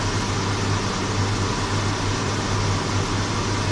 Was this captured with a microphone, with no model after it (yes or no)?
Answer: yes